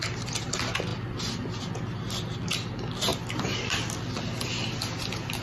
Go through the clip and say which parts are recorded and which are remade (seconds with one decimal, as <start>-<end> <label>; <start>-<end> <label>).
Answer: 0.0-5.4 recorded